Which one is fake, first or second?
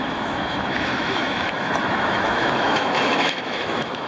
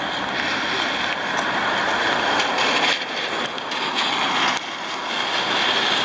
first